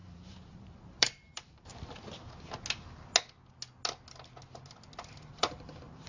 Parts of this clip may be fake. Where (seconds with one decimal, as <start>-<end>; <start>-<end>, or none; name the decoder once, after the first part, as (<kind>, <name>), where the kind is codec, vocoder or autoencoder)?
0.0-1.7 (vocoder, BigVGAN v2); 5.3-6.1